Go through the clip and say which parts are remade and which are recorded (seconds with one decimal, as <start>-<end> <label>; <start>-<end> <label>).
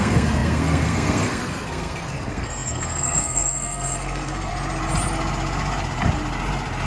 0.0-4.5 remade; 4.5-6.9 recorded